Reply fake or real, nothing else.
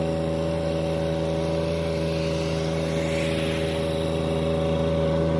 real